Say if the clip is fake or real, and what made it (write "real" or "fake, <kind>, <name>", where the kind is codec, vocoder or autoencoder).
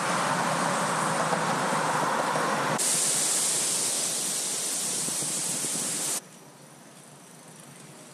real